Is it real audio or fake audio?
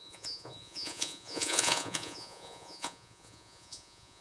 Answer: fake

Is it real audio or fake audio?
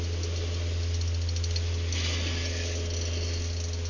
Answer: real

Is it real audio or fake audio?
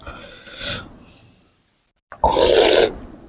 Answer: real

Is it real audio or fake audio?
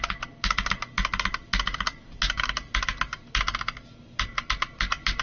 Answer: real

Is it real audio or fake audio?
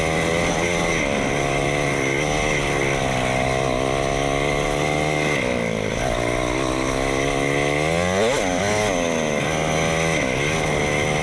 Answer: real